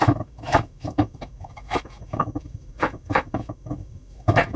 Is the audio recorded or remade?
remade